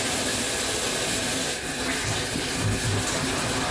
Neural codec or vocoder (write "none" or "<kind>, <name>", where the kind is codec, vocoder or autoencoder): none